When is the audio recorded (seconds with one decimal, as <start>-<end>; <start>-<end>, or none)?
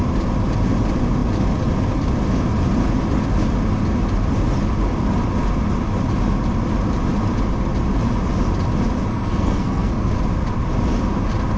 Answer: 0.0-9.1; 10.1-11.6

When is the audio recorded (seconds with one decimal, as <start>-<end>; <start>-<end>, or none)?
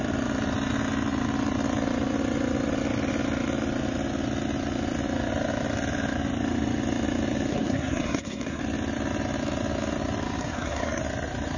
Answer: 0.0-7.5; 8.6-10.4; 11.0-11.6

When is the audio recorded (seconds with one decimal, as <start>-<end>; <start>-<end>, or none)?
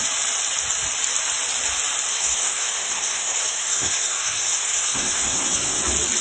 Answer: 0.0-2.1; 5.8-6.2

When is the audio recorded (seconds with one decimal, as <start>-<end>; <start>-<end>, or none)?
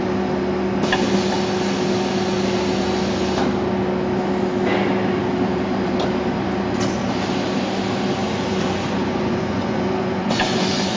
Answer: 0.0-8.2